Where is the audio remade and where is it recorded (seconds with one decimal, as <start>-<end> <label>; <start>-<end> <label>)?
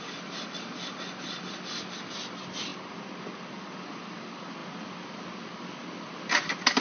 0.0-6.8 recorded